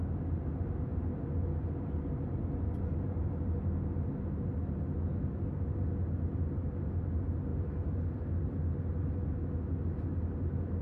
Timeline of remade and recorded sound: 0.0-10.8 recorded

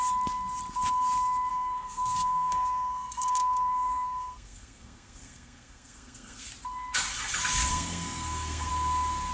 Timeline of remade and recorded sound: 0.0-1.5 recorded; 1.5-6.5 remade; 6.5-7.7 recorded; 7.7-8.7 remade; 8.7-9.3 recorded